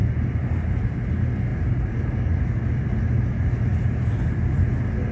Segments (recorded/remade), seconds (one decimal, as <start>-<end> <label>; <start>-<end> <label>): 0.0-5.1 recorded